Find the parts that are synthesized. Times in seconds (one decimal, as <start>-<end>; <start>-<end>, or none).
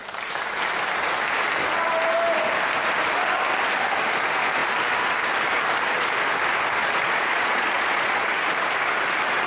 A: 6.8-8.3